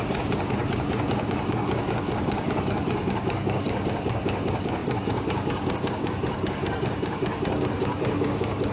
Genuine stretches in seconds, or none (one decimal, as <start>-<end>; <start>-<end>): none